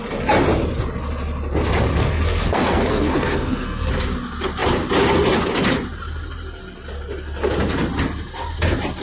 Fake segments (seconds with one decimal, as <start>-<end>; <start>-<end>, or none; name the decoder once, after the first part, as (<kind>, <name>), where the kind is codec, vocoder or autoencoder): 1.9-3.9 (codec, SNAC)